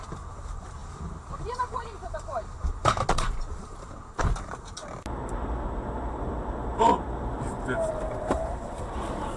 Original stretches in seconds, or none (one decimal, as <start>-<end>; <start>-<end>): 4.8-7.9